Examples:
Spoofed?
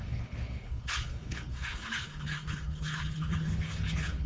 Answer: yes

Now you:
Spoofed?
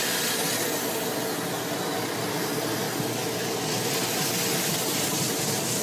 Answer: no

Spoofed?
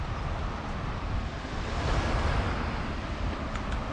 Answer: no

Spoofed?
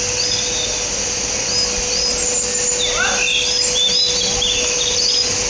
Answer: no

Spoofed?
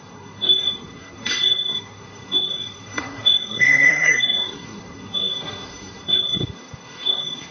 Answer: yes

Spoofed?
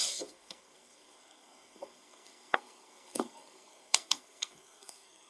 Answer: yes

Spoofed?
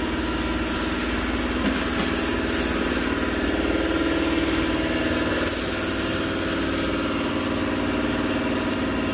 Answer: no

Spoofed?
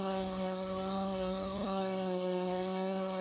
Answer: yes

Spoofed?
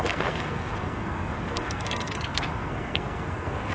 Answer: yes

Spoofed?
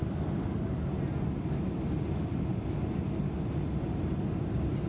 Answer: no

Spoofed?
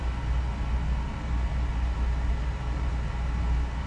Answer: no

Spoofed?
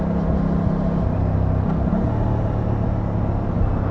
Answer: no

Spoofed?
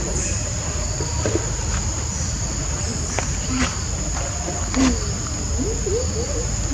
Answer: no